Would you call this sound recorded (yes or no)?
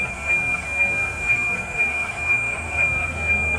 no